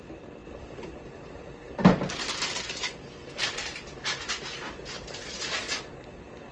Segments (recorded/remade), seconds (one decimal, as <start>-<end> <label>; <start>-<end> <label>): 0.0-5.2 recorded; 5.2-5.8 remade; 5.8-6.5 recorded